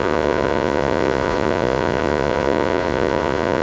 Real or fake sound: fake